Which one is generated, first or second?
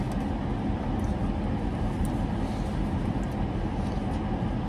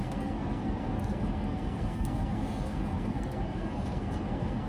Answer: second